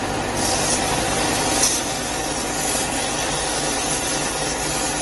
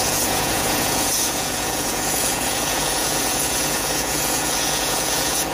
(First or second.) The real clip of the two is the first